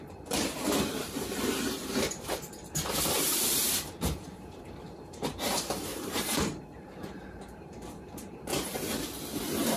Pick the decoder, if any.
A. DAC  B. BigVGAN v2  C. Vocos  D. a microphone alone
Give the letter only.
B